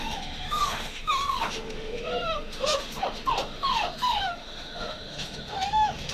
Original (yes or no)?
no